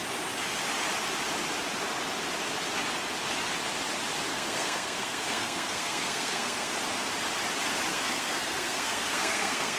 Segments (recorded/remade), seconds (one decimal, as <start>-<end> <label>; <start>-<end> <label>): 0.0-4.3 recorded; 4.3-6.7 remade; 6.7-7.9 recorded; 7.9-9.8 remade